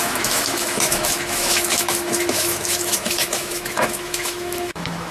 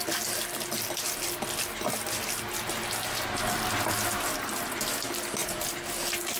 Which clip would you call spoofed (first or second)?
first